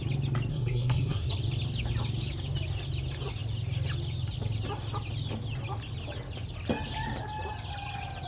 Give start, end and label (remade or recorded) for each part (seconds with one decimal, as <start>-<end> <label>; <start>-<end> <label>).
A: 0.0-0.5 recorded; 0.5-1.3 remade; 1.3-8.3 recorded